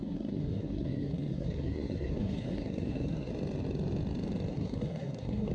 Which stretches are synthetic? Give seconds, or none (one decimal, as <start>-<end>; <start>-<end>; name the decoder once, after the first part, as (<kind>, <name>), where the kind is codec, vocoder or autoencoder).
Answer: 0.0-3.3 (codec, SNAC); 4.5-5.5

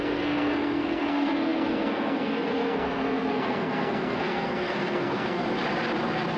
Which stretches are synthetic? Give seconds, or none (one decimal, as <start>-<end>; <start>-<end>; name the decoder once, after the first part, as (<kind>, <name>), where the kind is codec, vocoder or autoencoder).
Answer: 0.0-5.4 (codec, SNAC)

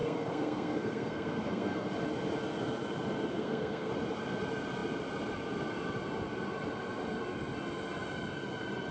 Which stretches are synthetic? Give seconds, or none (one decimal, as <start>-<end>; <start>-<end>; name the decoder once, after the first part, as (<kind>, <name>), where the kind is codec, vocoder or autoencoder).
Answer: 0.0-1.9 (codec, SNAC); 3.3-3.9

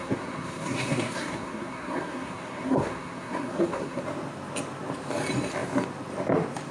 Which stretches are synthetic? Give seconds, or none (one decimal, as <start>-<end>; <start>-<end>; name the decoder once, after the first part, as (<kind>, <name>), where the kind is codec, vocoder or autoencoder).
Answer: 0.0-4.0 (codec, SNAC)

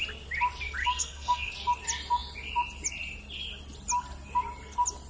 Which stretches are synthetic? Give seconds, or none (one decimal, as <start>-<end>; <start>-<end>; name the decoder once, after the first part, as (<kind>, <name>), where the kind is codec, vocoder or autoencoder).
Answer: 0.8-1.5 (codec, SNAC)

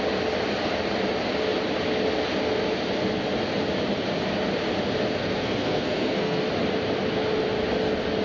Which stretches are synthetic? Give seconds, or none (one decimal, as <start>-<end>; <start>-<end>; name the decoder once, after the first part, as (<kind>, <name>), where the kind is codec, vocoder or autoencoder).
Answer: 5.2-6.4 (codec, SNAC)